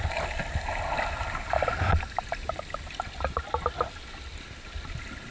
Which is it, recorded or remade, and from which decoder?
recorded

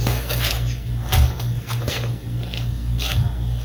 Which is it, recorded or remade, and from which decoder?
remade, codec, SNAC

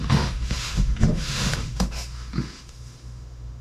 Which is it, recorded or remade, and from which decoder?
remade, autoencoder, DAC-VAE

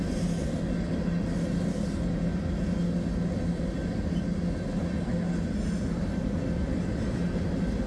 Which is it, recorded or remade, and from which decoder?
recorded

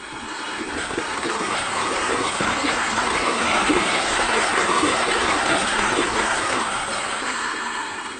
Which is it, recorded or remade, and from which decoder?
remade, codec, SNAC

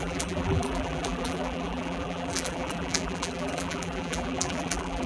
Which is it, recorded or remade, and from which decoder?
remade, vocoder, BigVGAN v2